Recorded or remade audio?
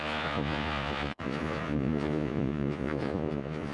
remade